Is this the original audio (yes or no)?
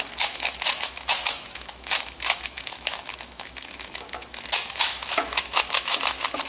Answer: no